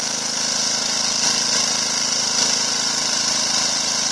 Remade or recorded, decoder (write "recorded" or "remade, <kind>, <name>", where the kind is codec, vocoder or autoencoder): remade, vocoder, BigVGAN v2